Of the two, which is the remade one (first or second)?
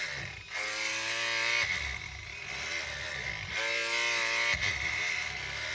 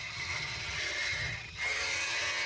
second